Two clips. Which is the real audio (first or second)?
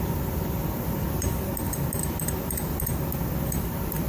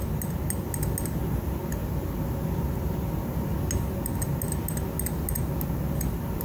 second